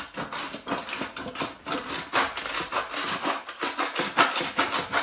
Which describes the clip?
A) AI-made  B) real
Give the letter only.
B